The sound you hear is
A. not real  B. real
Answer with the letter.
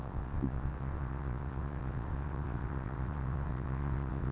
A